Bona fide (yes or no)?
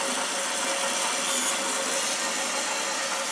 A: yes